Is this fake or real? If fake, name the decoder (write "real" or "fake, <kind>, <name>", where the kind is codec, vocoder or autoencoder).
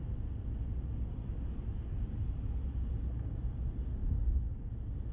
real